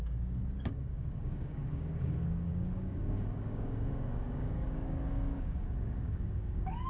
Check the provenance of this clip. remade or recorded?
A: remade